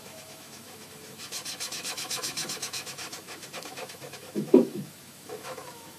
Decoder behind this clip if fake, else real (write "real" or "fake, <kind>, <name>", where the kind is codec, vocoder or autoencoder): fake, autoencoder, DAC-VAE